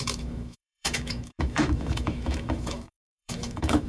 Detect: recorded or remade remade